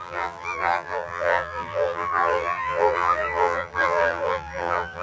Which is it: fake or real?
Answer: fake